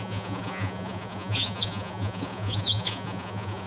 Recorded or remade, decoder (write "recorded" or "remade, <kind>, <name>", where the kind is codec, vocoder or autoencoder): remade, vocoder, Vocos